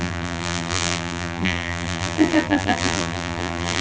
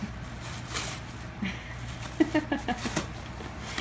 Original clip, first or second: second